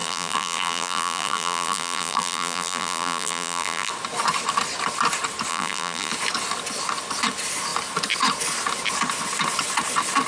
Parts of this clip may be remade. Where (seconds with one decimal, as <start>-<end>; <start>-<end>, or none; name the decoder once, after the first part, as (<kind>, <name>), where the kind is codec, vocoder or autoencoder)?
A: 0.0-3.9 (vocoder, BigVGAN v2); 5.5-6.1